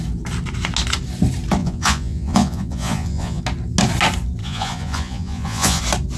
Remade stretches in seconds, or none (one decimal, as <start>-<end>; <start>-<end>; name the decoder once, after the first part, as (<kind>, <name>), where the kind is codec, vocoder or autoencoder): 1.6-3.4 (vocoder, Vocos); 4.4-5.8